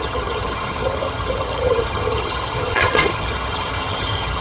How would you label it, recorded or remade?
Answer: remade